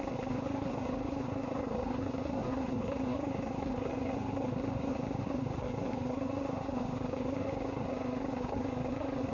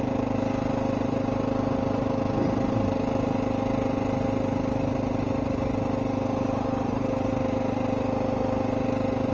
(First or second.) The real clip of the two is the second